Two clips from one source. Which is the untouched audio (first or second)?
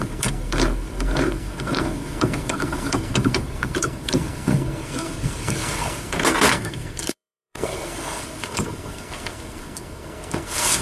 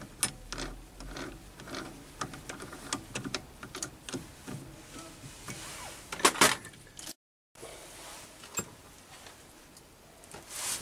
second